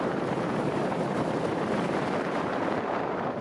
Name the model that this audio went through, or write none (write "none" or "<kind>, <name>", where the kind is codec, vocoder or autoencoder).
vocoder, BigVGAN v2